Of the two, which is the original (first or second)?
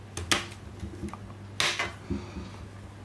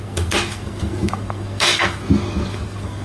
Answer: first